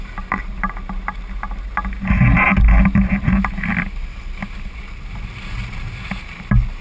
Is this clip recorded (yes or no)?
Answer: yes